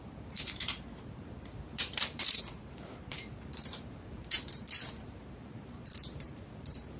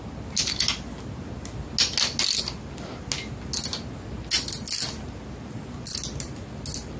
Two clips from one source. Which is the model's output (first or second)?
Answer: first